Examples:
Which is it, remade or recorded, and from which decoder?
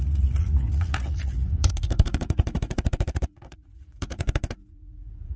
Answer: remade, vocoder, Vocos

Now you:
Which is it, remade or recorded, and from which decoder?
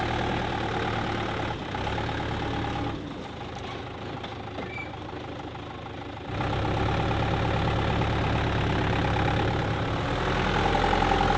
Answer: recorded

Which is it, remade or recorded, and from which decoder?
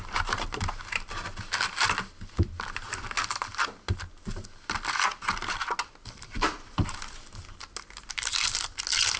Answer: recorded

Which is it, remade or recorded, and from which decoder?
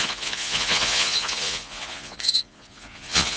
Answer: remade, vocoder, Vocos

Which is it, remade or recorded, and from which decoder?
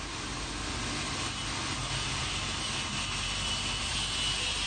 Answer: recorded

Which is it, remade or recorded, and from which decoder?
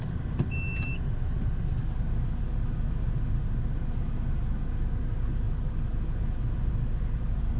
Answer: recorded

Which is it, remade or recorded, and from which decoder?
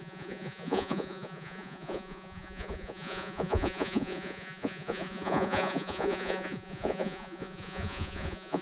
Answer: remade, vocoder, Vocos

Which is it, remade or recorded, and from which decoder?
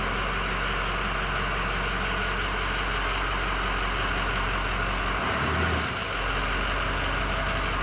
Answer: recorded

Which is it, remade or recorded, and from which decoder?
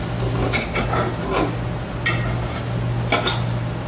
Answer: recorded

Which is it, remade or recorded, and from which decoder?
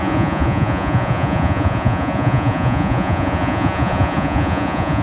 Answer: remade, vocoder, Vocos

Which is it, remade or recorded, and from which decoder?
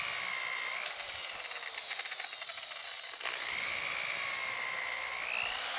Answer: recorded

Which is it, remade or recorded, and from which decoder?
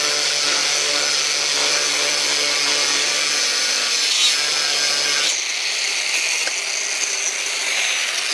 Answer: recorded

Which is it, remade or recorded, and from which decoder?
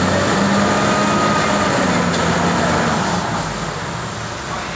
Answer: recorded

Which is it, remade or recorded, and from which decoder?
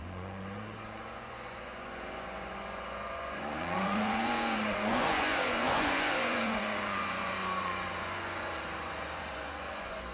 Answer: remade, vocoder, Vocos